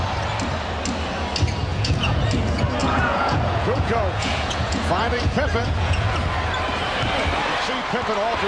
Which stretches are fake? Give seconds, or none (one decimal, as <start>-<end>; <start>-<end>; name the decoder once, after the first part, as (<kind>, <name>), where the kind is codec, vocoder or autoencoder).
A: 1.7-2.2 (vocoder, Vocos); 2.8-6.0